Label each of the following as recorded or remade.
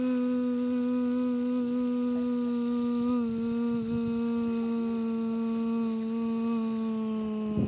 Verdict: recorded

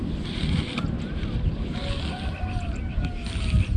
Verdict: recorded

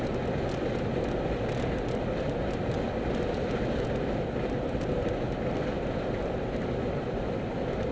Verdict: recorded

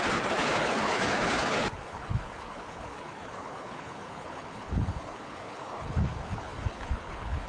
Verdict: remade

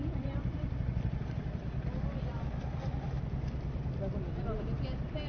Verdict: remade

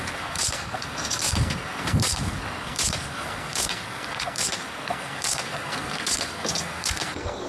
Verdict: remade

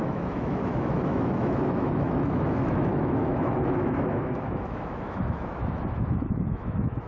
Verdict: remade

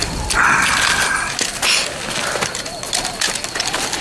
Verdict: recorded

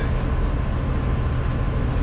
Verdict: recorded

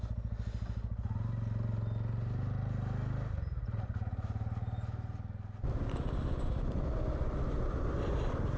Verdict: recorded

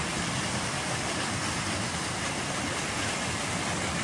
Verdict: recorded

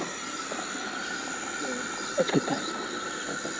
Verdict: recorded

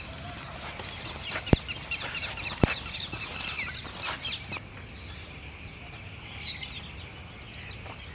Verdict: recorded